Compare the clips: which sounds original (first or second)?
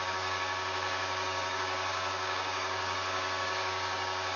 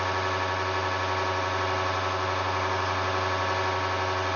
second